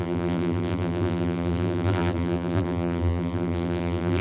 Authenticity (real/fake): fake